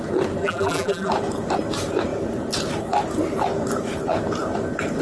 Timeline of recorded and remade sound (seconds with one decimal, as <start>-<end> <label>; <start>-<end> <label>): 0.0-0.4 recorded; 0.4-1.1 remade; 1.1-5.0 recorded

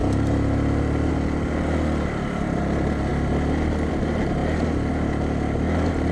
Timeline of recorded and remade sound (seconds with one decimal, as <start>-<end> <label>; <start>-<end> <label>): 0.0-6.1 recorded

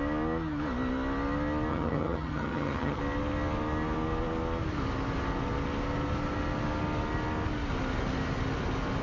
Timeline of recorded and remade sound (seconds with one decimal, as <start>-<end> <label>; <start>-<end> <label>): 0.0-1.7 recorded; 1.7-3.0 remade; 3.0-9.0 recorded

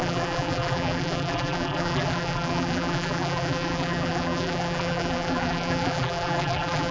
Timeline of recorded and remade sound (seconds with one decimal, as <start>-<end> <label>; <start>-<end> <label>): 0.0-6.9 remade

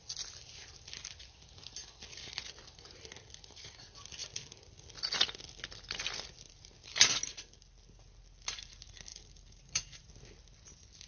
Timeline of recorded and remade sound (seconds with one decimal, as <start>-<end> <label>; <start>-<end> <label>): 0.0-9.1 recorded; 9.1-10.1 remade; 10.1-11.1 recorded

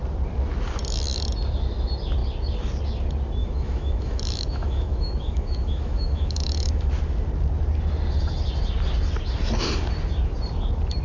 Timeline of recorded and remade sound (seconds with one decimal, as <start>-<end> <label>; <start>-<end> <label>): 0.0-3.4 recorded; 3.4-6.9 remade; 6.9-11.0 recorded